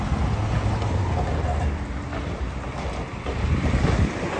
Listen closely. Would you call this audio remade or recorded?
recorded